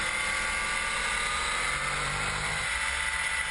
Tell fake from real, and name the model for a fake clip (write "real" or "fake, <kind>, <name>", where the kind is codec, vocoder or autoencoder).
real